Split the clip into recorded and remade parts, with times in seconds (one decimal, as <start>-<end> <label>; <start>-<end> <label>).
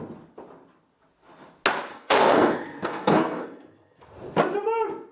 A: 0.0-1.9 recorded; 1.9-4.0 remade; 4.0-5.1 recorded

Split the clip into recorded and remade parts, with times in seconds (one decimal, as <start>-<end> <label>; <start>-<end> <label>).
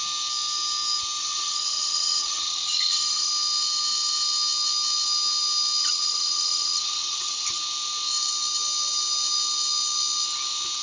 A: 0.0-1.2 recorded; 1.2-3.3 remade; 3.3-5.8 recorded; 5.8-7.6 remade; 7.6-10.8 recorded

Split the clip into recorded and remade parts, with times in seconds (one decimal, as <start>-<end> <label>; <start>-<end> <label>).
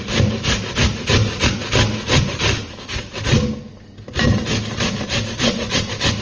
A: 0.0-1.2 remade; 1.2-2.3 recorded; 2.3-3.1 remade; 3.1-6.2 recorded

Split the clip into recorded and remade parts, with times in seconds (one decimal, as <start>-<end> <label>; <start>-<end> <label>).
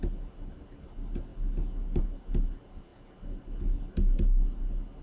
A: 0.0-5.0 recorded